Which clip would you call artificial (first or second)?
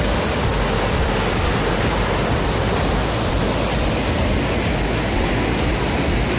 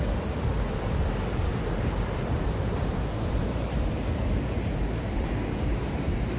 second